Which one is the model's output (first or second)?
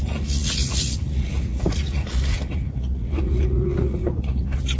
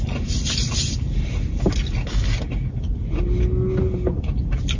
first